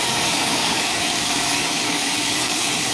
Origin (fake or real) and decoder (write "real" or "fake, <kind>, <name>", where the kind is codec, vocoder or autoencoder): fake, codec, DAC